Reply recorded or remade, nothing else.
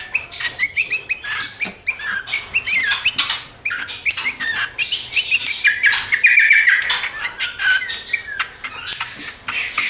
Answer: recorded